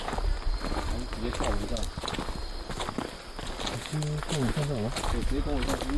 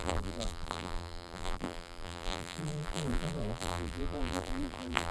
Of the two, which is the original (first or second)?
first